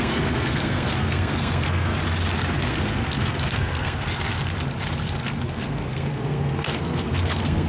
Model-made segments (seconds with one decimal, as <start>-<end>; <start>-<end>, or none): 0.0-1.9; 2.7-4.1; 5.1-7.7